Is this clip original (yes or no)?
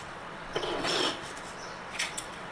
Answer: no